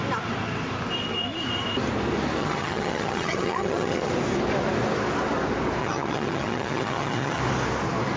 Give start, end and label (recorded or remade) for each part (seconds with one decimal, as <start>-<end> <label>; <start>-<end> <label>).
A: 0.0-2.4 recorded; 2.4-4.1 remade; 4.1-5.8 recorded; 5.8-7.4 remade; 7.4-8.2 recorded